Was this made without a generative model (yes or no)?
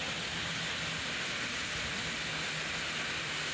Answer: yes